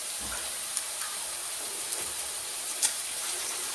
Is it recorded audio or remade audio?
remade